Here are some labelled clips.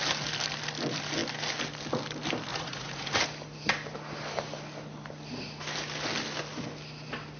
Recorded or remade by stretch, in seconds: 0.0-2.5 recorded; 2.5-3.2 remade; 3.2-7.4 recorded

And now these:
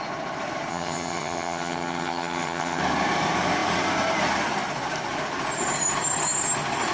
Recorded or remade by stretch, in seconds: 0.0-0.7 recorded; 0.7-2.8 remade; 2.8-6.9 recorded

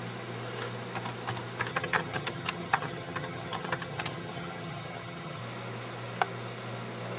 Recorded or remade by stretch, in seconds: 0.0-1.7 recorded; 1.7-5.4 remade; 5.4-7.2 recorded

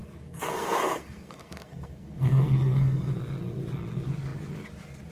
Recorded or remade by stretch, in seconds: 0.0-3.1 remade; 3.1-5.1 recorded

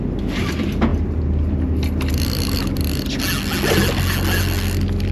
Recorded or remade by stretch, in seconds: 0.0-5.1 recorded

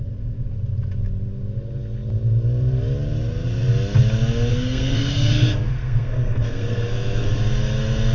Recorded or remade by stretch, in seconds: 0.0-4.5 recorded; 4.5-7.4 remade; 7.4-8.1 recorded

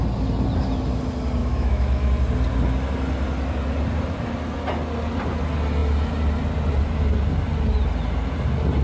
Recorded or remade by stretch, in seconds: 0.0-1.4 recorded; 1.4-2.1 remade; 2.1-8.8 recorded

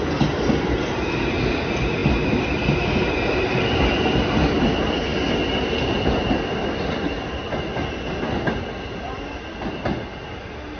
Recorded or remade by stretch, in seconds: 0.0-10.8 recorded